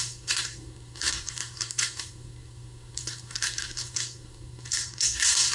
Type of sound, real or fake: fake